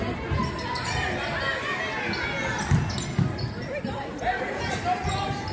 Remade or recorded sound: recorded